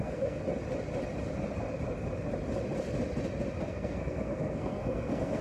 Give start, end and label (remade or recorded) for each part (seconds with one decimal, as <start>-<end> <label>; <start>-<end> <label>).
0.0-0.4 remade; 0.4-3.6 recorded; 3.6-5.4 remade